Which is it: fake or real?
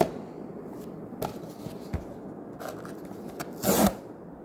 real